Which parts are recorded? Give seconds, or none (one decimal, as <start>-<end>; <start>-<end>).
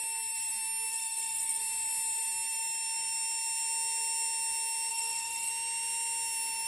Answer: 0.0-0.9; 1.6-4.9; 5.5-6.7